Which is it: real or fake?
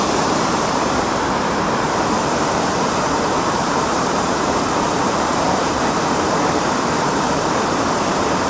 fake